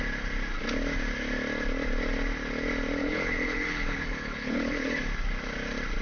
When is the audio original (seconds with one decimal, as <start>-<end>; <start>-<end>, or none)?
0.0-3.0; 5.0-6.0